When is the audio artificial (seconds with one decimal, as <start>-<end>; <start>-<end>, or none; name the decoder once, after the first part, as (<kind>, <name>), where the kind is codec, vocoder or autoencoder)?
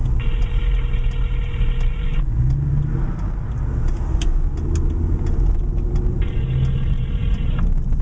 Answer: none